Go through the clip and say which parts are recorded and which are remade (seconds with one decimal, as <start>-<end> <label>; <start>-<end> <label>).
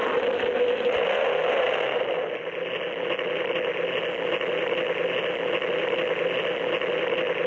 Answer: 0.0-7.5 recorded